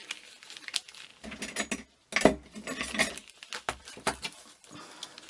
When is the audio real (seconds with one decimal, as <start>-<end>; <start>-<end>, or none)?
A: 0.0-5.3